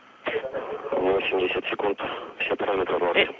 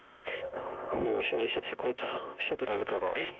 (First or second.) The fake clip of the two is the second